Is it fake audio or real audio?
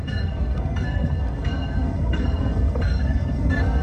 fake